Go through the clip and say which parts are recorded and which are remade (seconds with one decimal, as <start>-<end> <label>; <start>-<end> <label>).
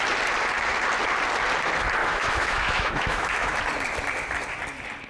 0.0-2.0 recorded; 2.0-3.6 remade; 3.6-5.1 recorded